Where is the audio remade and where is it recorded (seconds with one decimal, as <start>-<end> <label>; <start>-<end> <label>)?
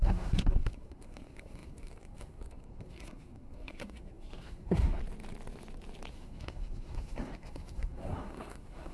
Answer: 0.0-5.0 remade; 5.0-6.1 recorded; 6.1-8.9 remade